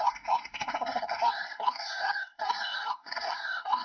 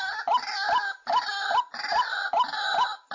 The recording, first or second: second